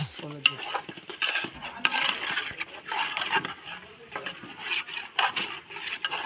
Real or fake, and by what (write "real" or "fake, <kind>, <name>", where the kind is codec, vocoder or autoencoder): real